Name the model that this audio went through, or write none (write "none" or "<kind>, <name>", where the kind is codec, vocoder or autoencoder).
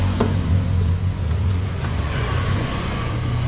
vocoder, Vocos